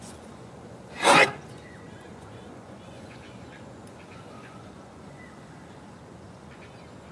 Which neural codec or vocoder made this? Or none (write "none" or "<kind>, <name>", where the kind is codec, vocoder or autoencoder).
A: vocoder, Vocos